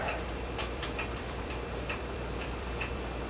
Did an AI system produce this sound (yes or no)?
yes